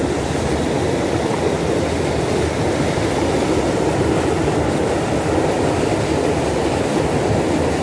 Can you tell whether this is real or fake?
real